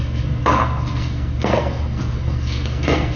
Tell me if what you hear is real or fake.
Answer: fake